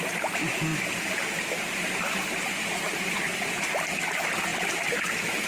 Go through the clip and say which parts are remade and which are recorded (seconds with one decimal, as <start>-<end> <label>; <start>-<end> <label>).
0.0-5.5 recorded

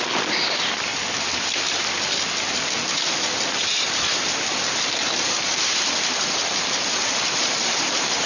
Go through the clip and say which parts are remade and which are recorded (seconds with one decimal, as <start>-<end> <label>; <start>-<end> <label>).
0.0-3.6 recorded; 3.6-8.3 remade

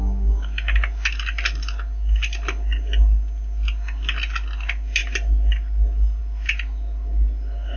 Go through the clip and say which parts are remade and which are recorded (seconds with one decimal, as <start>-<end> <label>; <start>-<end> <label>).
0.0-7.8 recorded